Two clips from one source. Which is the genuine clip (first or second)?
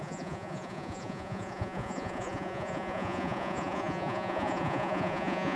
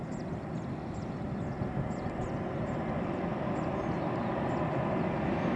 second